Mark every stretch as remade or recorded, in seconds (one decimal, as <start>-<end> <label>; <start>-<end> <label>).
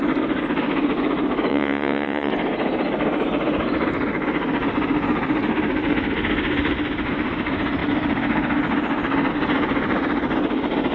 0.0-1.5 recorded; 1.5-2.3 remade; 2.3-10.9 recorded